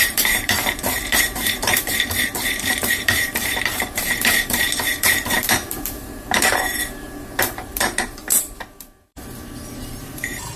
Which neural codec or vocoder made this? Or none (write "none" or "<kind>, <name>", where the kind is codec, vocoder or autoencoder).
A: vocoder, BigVGAN v2